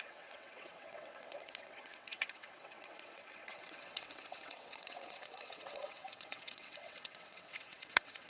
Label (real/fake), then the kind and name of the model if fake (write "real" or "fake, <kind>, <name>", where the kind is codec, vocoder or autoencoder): fake, vocoder, WaveNeXt